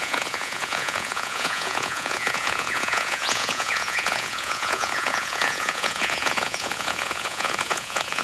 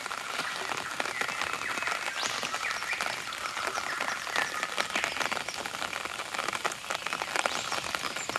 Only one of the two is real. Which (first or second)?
second